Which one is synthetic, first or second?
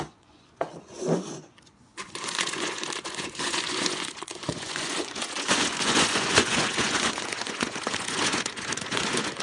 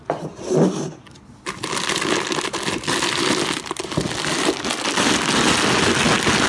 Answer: first